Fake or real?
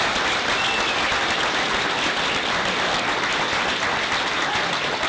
real